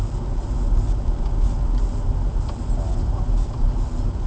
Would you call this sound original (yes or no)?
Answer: yes